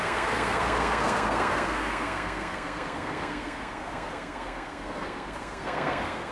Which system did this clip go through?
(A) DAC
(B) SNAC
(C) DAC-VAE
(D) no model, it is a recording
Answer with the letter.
B